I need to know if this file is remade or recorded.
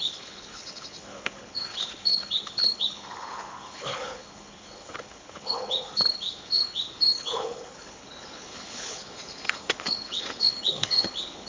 remade